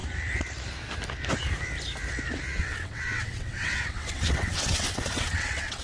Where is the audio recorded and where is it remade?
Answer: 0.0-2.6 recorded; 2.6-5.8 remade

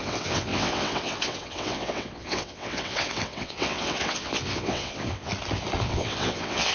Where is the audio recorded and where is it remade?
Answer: 0.0-5.3 remade; 5.3-5.8 recorded; 5.8-6.7 remade